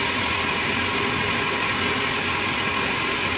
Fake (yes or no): no